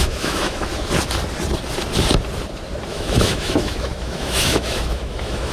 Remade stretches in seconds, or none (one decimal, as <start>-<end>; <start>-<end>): 0.0-0.7; 2.9-5.5